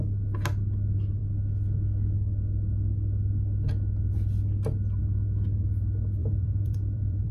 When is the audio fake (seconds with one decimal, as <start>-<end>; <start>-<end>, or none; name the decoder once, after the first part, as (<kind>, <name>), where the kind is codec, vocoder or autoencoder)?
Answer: 6.2-7.3 (vocoder, BigVGAN v2)